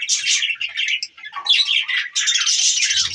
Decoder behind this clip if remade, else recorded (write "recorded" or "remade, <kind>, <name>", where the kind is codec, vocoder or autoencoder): recorded